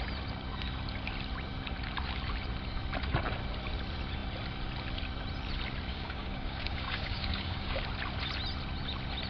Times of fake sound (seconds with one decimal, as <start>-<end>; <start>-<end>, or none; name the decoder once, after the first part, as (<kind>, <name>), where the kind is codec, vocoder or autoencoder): 5.9-7.8 (codec, DAC)

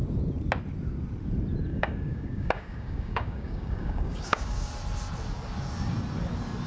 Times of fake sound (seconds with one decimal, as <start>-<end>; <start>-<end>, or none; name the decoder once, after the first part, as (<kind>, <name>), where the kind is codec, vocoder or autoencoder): 1.7-4.7 (codec, DAC)

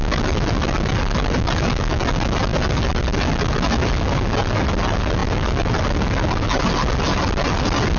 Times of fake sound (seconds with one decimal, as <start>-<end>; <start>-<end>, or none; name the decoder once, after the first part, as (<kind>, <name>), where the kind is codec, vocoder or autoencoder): none

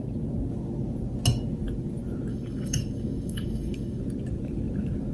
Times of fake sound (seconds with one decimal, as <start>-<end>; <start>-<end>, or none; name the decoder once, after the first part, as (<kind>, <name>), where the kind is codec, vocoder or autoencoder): 2.3-4.0 (codec, DAC)

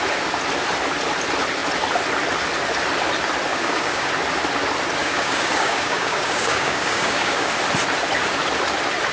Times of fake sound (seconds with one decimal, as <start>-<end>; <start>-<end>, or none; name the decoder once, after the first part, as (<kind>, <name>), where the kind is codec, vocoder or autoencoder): 3.5-4.1 (codec, DAC); 5.0-7.5

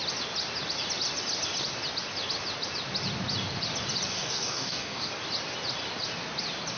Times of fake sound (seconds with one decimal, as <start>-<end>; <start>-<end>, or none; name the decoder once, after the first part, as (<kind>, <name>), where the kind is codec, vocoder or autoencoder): 4.1-5.1 (codec, DAC)

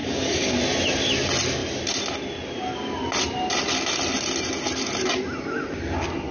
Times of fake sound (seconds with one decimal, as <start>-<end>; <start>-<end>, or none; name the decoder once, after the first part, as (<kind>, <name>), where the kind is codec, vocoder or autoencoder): 0.0-0.6 (codec, DAC)